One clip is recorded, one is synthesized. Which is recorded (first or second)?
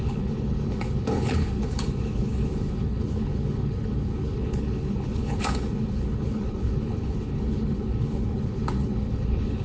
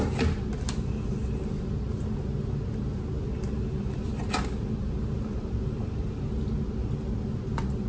second